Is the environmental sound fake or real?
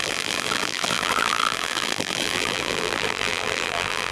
fake